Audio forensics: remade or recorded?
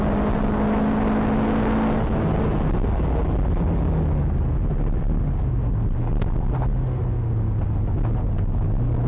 recorded